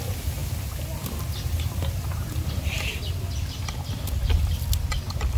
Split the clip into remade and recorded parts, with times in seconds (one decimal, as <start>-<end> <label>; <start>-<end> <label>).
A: 0.0-5.4 recorded